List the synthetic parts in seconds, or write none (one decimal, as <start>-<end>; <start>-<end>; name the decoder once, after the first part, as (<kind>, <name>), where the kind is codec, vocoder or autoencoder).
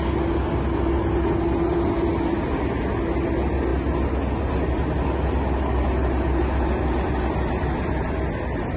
none